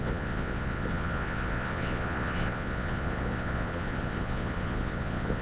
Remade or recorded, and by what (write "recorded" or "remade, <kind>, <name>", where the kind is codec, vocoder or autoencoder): remade, vocoder, Vocos